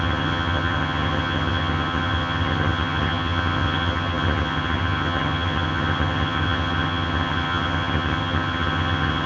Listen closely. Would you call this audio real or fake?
fake